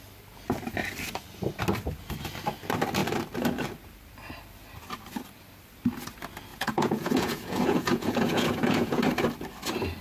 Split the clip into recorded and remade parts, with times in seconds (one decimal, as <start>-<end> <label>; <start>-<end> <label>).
0.0-6.5 recorded; 6.5-9.0 remade; 9.0-10.0 recorded